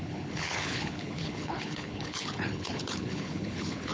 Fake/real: fake